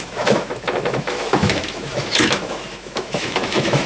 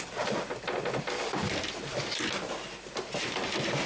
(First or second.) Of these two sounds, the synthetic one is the first